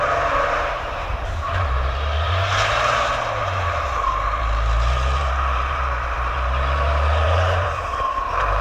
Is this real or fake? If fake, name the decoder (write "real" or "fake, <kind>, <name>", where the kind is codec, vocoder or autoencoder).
fake, vocoder, BigVGAN v2